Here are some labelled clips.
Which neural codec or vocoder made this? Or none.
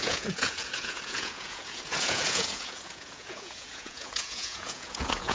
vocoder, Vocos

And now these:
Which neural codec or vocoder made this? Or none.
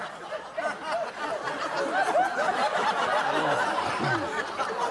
none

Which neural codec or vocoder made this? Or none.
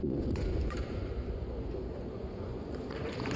vocoder, Vocos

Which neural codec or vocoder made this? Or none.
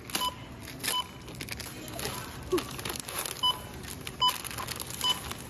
none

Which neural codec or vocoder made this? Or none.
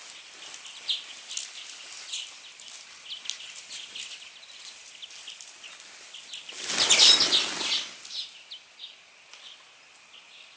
none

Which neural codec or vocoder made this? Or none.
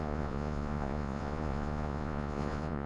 vocoder, Vocos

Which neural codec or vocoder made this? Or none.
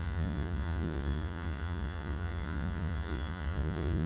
vocoder, Vocos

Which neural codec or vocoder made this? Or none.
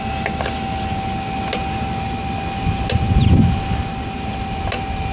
none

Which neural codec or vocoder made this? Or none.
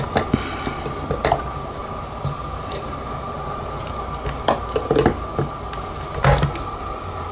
none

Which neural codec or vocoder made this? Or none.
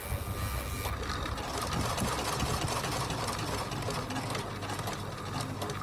none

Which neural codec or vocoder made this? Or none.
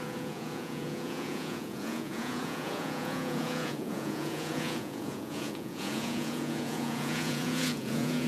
vocoder, Vocos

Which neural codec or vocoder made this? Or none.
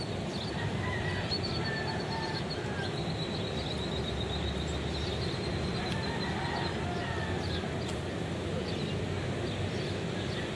none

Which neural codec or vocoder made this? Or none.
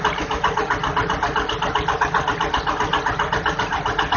none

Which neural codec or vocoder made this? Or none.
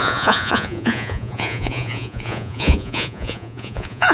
vocoder, Vocos